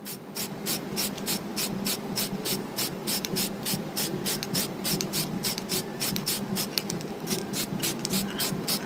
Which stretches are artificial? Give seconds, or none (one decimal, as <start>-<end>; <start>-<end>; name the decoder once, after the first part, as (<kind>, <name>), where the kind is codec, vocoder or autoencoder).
3.0-6.1 (vocoder, BigVGAN v2)

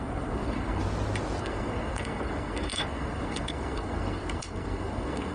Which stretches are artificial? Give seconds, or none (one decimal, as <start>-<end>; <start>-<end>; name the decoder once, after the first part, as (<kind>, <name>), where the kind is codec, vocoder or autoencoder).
0.0-0.8 (codec, SNAC); 1.4-5.3

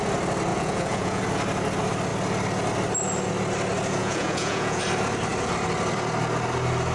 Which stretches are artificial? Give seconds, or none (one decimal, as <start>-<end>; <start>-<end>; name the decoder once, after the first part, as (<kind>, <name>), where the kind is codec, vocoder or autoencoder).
0.5-1.2 (vocoder, Vocos); 4.0-4.8